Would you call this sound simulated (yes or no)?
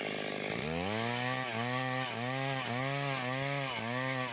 no